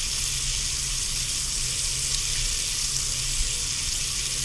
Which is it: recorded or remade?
recorded